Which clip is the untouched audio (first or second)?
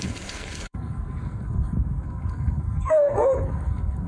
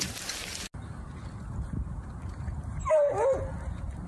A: second